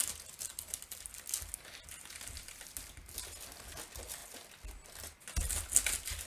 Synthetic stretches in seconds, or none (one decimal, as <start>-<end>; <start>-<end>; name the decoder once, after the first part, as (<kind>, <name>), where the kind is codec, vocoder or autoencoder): none